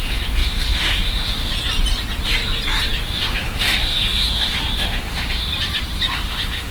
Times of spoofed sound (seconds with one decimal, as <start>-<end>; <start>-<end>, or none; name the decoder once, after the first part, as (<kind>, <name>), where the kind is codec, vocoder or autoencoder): 0.0-1.5 (autoencoder, DAC-VAE); 3.0-5.5; 6.1-6.7